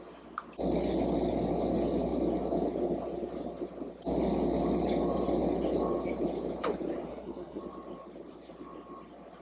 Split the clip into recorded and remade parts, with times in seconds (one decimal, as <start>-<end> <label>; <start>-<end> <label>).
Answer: 0.0-7.1 recorded; 7.1-7.6 remade; 7.6-9.4 recorded